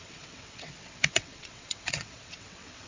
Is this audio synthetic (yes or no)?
yes